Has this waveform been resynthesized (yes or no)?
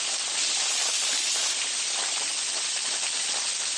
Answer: no